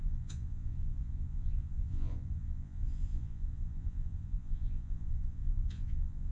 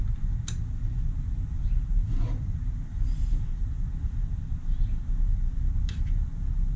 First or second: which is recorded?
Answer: second